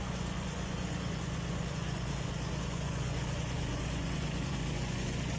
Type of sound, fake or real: fake